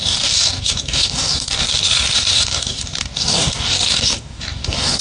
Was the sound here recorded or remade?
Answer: remade